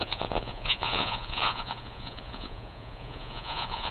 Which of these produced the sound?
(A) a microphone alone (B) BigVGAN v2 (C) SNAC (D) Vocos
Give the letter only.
D